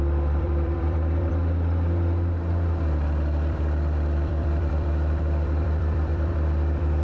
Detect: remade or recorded remade